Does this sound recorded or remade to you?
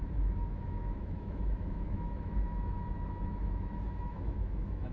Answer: remade